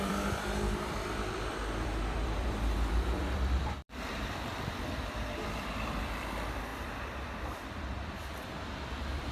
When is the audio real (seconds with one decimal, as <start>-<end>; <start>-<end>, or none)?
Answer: none